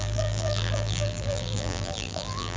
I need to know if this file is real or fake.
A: fake